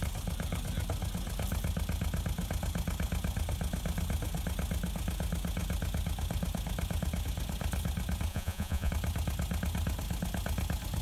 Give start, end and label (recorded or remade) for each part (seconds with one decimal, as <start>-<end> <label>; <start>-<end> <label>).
0.0-8.3 recorded; 8.3-8.9 remade; 8.9-11.0 recorded